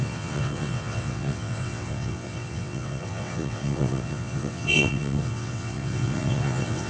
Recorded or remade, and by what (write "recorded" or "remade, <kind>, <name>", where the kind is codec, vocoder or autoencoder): remade, vocoder, WaveNeXt